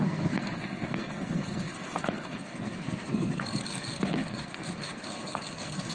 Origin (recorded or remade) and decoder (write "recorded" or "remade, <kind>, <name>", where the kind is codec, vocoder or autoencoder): remade, codec, SNAC